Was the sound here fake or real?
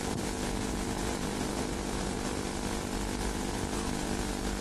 fake